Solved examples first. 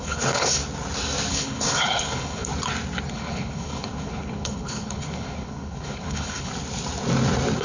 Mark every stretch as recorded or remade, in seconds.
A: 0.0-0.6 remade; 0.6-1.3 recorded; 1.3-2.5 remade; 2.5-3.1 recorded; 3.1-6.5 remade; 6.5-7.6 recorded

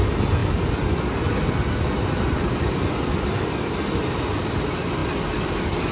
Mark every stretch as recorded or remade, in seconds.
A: 0.0-0.4 recorded; 0.4-3.8 remade; 3.8-5.0 recorded; 5.0-5.9 remade

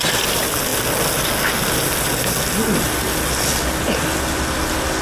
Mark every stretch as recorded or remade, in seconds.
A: 0.0-5.0 recorded

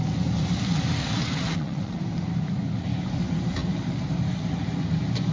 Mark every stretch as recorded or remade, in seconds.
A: 0.0-1.0 recorded; 1.0-2.0 remade; 2.0-5.3 recorded

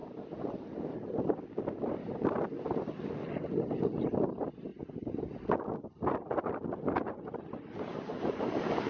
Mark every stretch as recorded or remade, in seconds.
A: 0.0-8.9 recorded

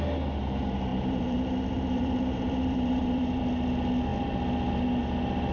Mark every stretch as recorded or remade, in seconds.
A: 0.0-0.9 recorded; 0.9-3.4 remade; 3.4-5.5 recorded

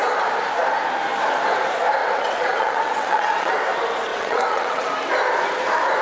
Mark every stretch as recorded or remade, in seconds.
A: 0.0-2.0 recorded; 2.0-3.5 remade; 3.5-4.1 recorded; 4.1-4.9 remade; 4.9-6.0 recorded